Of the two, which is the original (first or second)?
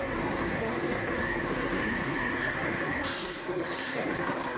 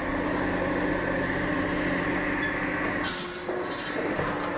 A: second